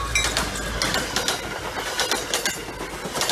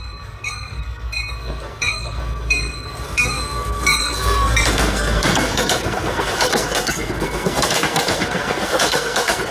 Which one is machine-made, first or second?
second